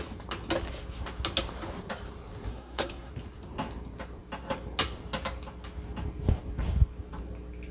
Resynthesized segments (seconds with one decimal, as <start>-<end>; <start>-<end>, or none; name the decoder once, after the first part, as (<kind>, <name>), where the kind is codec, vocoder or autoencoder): 2.5-3.1 (codec, SNAC)